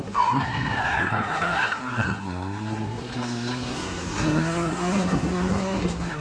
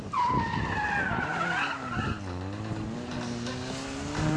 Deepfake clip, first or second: first